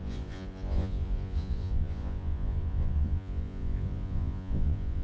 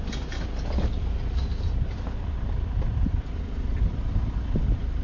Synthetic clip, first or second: first